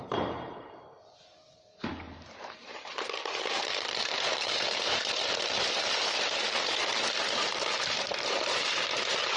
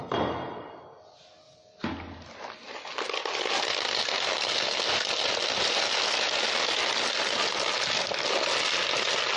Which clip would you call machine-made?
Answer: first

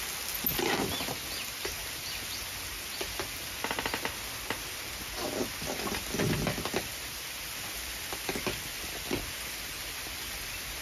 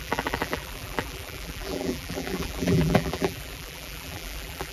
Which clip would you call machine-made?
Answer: second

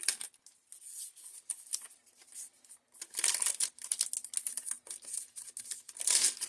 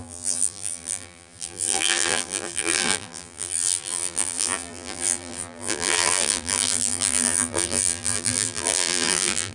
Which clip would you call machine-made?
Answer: second